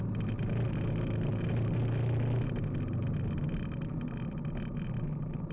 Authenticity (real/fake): real